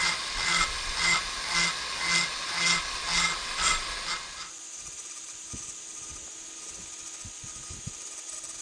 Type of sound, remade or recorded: recorded